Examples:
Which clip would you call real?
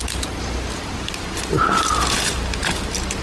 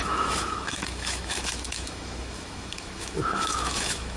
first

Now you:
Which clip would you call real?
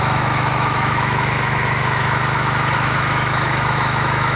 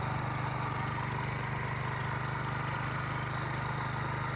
second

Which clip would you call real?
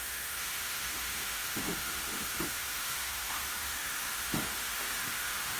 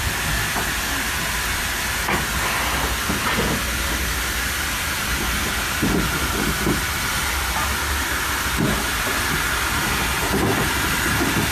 second